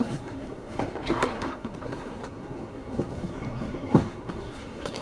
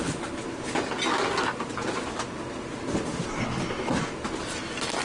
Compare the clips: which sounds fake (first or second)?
first